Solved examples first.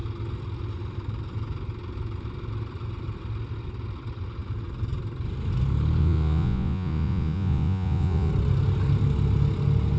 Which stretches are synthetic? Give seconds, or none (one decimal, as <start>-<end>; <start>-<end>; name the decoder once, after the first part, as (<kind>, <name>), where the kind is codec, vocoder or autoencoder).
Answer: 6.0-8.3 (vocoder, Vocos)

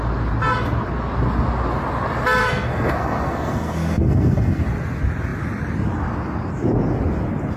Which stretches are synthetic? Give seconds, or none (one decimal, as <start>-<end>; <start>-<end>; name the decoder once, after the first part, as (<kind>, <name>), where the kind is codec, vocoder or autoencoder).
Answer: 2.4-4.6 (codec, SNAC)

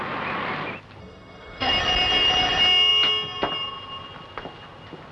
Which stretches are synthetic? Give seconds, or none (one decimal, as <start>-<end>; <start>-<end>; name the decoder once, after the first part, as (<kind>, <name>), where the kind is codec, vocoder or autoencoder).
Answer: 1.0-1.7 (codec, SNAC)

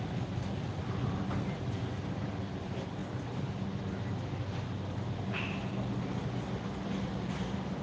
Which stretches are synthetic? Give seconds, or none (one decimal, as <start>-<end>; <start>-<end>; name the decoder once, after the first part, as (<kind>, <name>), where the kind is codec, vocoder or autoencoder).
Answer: none